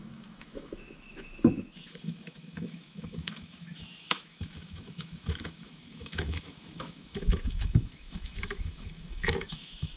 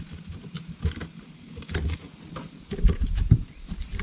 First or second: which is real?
second